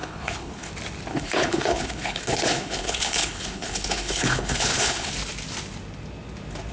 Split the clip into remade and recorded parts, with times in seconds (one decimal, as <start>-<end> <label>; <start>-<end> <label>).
0.0-0.7 remade; 0.7-1.1 recorded; 1.1-5.1 remade; 5.1-6.7 recorded